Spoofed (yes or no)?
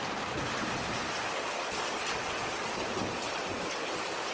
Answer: no